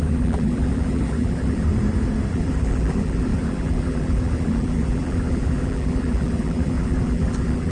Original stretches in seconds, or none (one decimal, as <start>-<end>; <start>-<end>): 1.7-2.3